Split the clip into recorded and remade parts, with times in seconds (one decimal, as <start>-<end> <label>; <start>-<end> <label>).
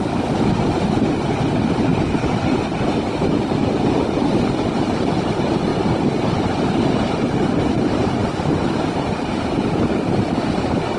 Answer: 0.0-1.9 recorded; 1.9-2.9 remade; 2.9-8.2 recorded; 8.2-9.9 remade; 9.9-11.0 recorded